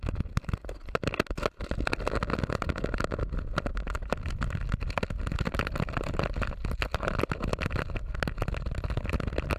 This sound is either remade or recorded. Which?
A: recorded